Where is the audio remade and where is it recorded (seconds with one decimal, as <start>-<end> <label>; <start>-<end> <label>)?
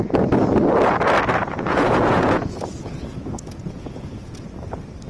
0.0-1.4 recorded; 1.4-4.4 remade; 4.4-5.1 recorded